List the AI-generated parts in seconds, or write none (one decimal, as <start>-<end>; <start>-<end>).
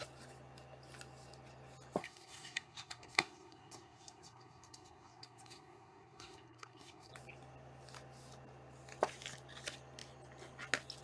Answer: 2.0-7.1